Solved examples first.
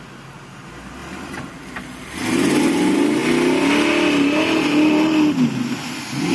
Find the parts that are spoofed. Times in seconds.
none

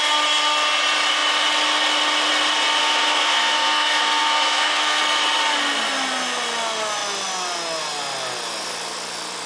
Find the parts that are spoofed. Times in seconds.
2.8-5.0 (codec, SNAC)

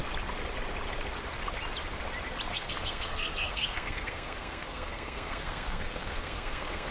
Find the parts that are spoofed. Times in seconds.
2.5-6.9 (codec, SNAC)

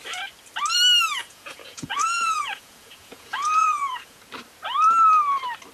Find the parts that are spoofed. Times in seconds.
1.2-4.2 (vocoder, Vocos)

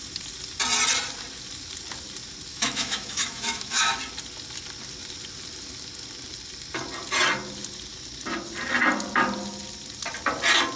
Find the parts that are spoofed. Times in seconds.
2.5-4.0 (autoencoder, DAC-VAE)

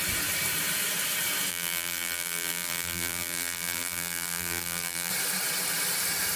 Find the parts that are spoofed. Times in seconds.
1.5-5.1 (vocoder, BigVGAN v2)

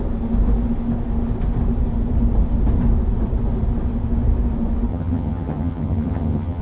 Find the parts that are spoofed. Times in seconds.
4.9-6.6 (vocoder, HiFi-GAN)

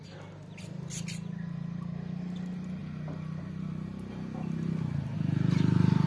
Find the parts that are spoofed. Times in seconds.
none